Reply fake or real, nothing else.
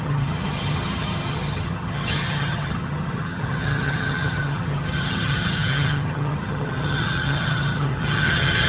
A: fake